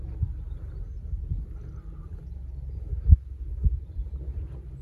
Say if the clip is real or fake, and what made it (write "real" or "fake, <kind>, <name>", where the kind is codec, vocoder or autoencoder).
real